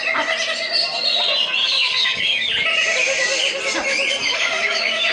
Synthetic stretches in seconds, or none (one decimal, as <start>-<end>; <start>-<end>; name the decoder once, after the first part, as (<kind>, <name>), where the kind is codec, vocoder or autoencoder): 1.6-2.5 (codec, DAC); 4.2-5.1

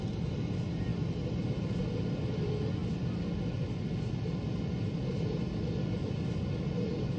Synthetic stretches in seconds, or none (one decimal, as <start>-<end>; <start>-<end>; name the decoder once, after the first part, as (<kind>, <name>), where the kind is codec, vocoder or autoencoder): none

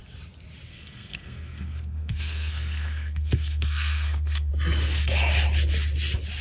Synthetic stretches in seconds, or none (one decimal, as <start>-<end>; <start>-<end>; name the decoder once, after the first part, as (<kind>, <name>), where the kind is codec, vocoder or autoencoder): 0.7-4.5 (codec, SNAC)

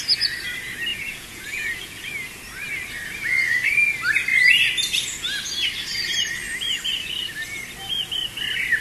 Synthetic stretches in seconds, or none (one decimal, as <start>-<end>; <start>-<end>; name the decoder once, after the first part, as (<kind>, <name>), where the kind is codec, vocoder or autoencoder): 0.9-2.1 (vocoder, Vocos)